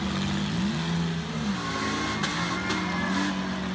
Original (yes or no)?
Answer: yes